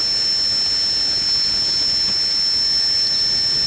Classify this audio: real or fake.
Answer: real